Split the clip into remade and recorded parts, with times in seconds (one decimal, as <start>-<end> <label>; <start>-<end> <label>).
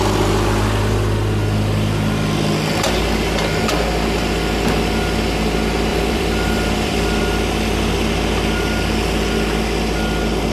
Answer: 0.0-5.9 recorded; 5.9-7.2 remade; 7.2-10.5 recorded